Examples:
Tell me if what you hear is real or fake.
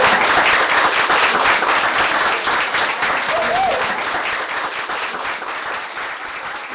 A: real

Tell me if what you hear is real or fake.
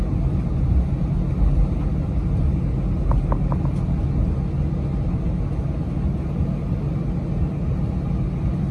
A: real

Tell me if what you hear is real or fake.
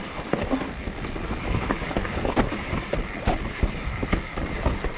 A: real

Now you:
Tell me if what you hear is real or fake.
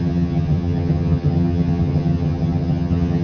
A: fake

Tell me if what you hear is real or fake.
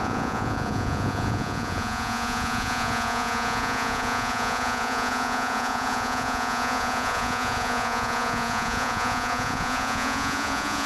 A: fake